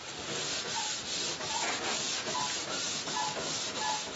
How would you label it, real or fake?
real